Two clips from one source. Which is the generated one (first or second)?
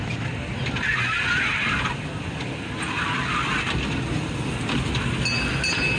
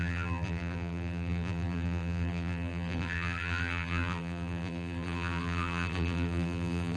second